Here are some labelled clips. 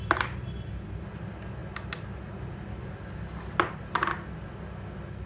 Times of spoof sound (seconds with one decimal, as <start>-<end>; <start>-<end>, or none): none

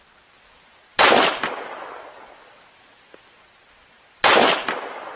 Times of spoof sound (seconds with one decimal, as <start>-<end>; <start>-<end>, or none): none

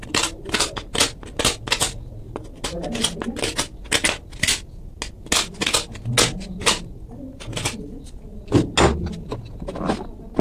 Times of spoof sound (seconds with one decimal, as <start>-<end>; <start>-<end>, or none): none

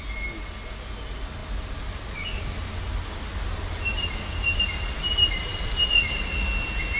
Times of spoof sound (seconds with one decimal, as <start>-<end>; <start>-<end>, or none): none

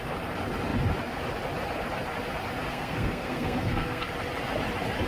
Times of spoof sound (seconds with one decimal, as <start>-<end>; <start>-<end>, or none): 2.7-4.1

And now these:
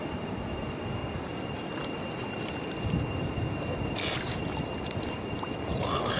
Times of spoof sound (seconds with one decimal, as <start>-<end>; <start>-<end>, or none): none